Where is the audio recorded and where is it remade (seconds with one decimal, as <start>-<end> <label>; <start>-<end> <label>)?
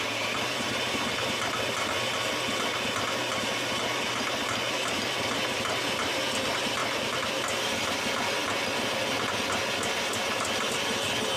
0.0-11.4 recorded